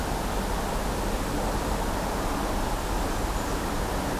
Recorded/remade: recorded